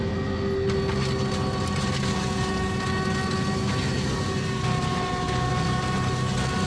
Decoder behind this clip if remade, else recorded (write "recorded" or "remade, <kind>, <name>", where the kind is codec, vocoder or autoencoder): recorded